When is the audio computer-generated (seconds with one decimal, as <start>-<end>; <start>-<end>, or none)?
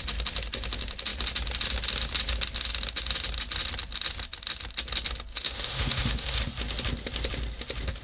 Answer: 5.3-6.4